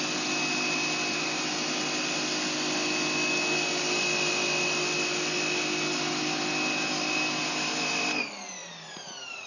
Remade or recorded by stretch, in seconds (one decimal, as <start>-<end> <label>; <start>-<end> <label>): 0.0-9.5 recorded